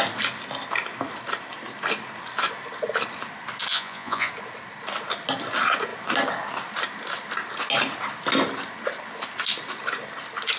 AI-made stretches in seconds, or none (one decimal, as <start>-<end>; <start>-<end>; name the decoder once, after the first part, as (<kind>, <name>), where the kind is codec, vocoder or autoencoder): 3.7-4.3 (vocoder, Vocos)